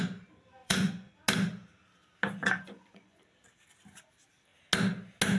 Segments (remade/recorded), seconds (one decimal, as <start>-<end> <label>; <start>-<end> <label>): 0.0-0.6 recorded; 0.6-1.1 remade; 1.1-2.4 recorded; 2.4-3.2 remade; 3.2-5.4 recorded

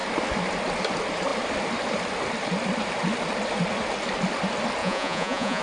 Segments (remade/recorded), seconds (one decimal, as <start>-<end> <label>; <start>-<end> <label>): 0.0-4.8 recorded; 4.8-5.6 remade

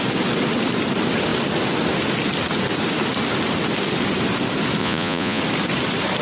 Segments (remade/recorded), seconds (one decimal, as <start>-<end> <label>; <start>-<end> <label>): 0.0-4.8 recorded; 4.8-5.4 remade; 5.4-6.2 recorded

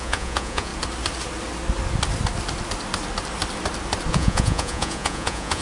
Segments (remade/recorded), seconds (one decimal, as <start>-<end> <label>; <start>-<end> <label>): 0.0-0.7 remade; 0.7-4.1 recorded; 4.1-5.6 remade